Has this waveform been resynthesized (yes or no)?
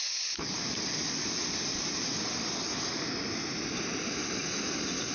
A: no